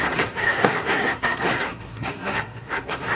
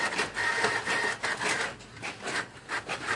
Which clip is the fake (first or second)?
first